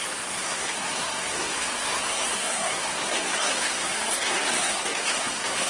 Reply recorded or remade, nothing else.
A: remade